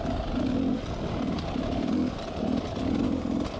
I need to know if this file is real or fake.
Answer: real